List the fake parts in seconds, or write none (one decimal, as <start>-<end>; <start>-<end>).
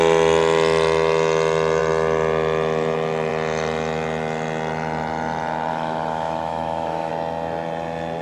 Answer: 5.7-7.1